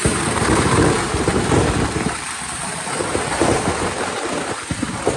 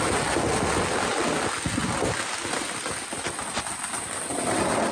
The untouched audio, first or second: second